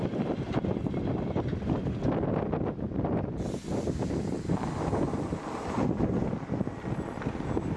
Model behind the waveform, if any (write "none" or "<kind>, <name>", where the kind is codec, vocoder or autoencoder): none